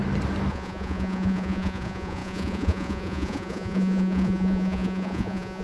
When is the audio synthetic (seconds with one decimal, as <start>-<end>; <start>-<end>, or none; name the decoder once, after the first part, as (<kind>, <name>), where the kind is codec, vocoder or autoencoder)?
0.5-5.6 (vocoder, Vocos)